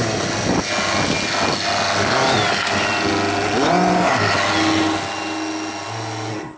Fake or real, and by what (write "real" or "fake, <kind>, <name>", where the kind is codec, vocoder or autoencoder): real